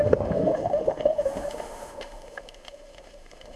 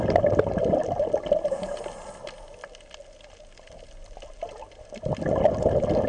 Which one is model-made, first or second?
first